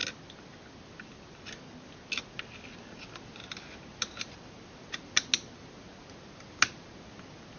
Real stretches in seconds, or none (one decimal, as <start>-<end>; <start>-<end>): 0.0-7.6